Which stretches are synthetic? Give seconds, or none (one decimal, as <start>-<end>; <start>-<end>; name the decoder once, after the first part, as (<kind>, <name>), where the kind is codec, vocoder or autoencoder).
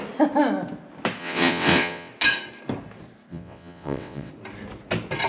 1.2-2.1 (vocoder, WaveNeXt); 3.3-4.3